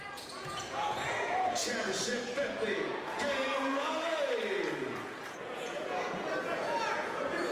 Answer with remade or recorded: remade